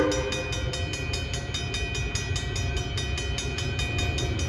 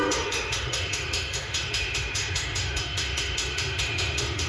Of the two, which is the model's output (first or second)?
second